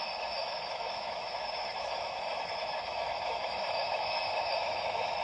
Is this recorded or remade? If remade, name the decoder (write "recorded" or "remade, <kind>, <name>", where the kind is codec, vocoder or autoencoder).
remade, autoencoder, DAC-VAE